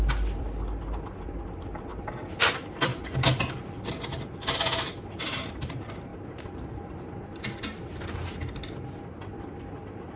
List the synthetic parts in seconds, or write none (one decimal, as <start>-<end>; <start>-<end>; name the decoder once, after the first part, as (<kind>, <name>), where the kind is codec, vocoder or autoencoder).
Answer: none